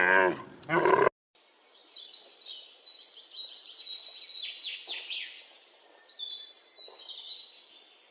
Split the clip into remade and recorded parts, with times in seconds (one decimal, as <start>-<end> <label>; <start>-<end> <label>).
0.0-1.8 recorded; 1.8-4.0 remade; 4.0-8.1 recorded